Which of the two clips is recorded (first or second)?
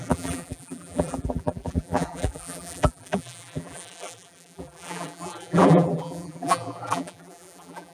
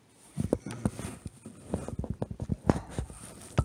second